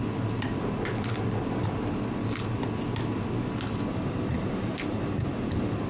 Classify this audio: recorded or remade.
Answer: recorded